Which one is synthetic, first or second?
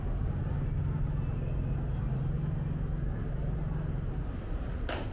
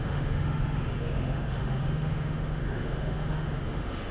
second